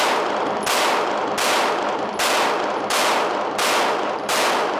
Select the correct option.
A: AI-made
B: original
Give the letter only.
B